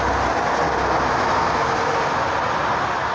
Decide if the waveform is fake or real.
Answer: real